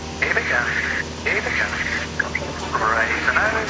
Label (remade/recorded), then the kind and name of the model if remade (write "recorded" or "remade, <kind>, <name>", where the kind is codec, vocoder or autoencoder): recorded